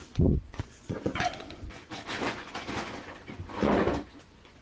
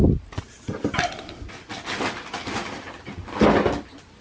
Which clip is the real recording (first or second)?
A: second